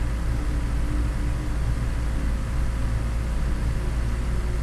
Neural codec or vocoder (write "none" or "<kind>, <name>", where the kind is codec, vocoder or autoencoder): none